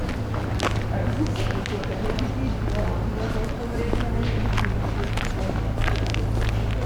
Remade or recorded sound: recorded